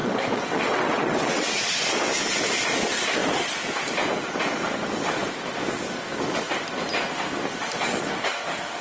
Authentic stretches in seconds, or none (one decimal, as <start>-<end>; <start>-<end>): 1.9-8.8